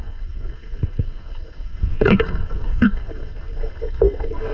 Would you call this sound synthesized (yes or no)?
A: yes